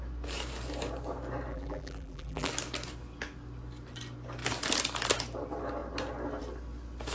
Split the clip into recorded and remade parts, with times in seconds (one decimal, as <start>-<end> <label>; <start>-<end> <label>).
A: 0.0-1.5 recorded; 1.5-2.5 remade; 2.5-7.1 recorded